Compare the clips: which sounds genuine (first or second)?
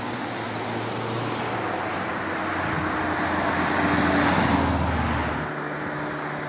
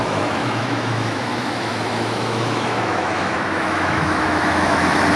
first